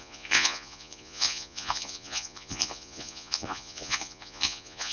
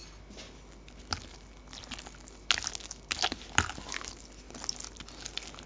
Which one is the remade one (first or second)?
first